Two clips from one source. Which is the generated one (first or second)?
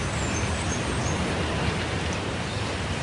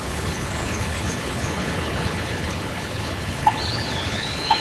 second